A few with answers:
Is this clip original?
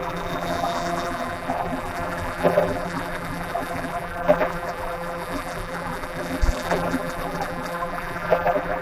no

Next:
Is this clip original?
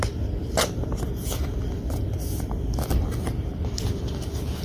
yes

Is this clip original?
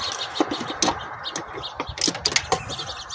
yes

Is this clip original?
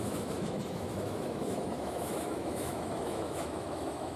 no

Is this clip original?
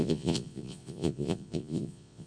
no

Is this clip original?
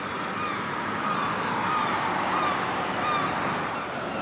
yes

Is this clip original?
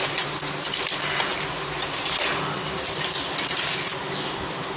yes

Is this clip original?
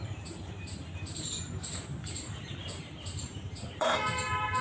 no